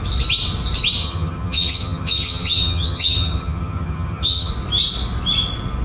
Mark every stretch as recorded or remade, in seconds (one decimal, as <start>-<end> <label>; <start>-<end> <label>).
0.0-1.0 recorded; 1.0-4.5 remade; 4.5-5.8 recorded